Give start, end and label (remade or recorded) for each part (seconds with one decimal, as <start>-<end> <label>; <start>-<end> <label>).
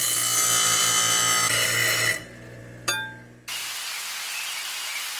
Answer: 0.0-5.2 recorded